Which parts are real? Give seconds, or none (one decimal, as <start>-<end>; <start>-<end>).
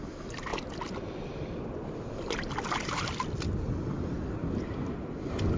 0.0-5.6